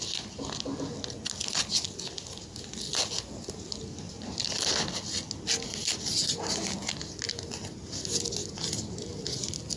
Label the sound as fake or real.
real